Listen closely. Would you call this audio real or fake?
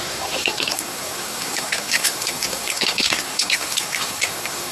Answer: fake